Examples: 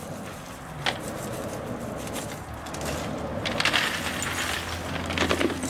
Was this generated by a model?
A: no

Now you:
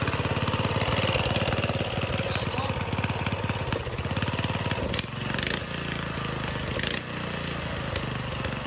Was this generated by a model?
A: no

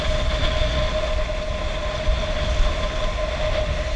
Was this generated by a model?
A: no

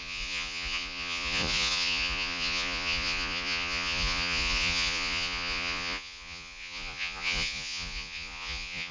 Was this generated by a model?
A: yes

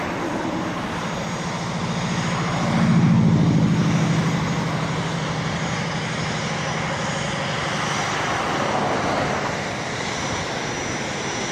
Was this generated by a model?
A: no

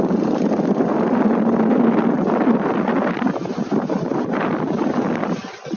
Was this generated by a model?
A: no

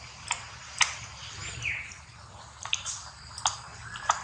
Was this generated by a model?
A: no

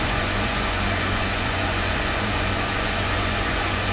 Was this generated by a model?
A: yes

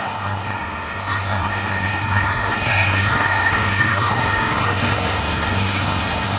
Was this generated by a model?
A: yes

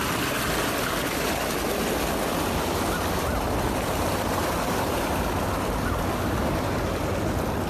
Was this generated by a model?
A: no